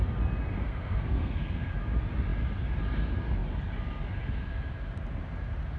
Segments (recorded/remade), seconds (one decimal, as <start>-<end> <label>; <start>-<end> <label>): 0.0-0.6 recorded; 0.6-1.7 remade; 1.7-5.8 recorded